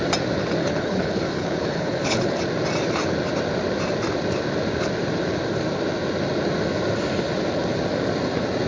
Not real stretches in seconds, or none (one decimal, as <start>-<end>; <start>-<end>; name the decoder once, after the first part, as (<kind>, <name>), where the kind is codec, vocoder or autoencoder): 0.6-2.4 (codec, HILCodec)